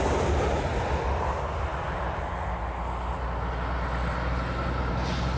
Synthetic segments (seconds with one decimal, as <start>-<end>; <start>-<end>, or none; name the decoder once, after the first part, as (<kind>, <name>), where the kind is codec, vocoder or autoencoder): none